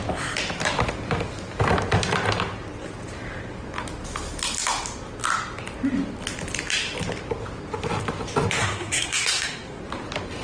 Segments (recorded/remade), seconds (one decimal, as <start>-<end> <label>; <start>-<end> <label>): 0.0-8.6 recorded; 8.6-9.8 remade; 9.8-10.4 recorded